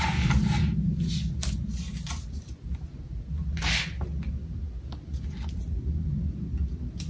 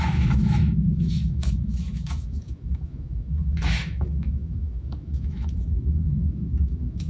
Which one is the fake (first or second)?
second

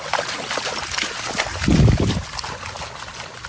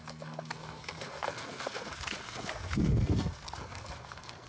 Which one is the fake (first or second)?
second